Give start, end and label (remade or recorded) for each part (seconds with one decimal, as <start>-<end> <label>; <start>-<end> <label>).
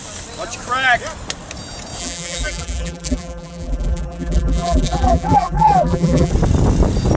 0.0-2.0 recorded; 2.0-6.3 remade; 6.3-7.2 recorded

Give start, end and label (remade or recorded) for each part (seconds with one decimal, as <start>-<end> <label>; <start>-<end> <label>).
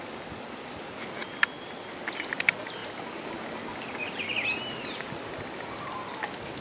0.0-6.6 recorded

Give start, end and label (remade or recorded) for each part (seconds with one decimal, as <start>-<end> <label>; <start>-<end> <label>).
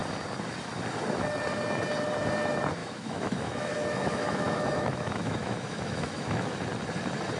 0.0-2.8 recorded; 2.8-6.5 remade; 6.5-7.4 recorded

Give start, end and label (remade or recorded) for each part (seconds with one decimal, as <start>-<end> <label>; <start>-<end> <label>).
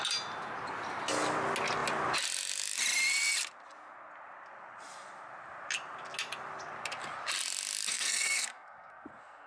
0.0-7.9 recorded; 7.9-9.5 remade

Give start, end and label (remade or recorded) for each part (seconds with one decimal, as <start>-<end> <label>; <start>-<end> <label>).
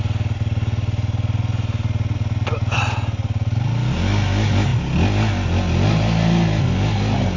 0.0-7.4 recorded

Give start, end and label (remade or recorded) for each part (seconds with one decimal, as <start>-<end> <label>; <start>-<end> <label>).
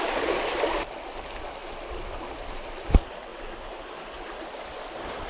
0.0-5.3 recorded